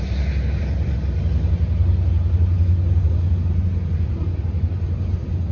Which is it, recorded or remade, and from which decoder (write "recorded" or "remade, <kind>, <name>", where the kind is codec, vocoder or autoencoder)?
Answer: recorded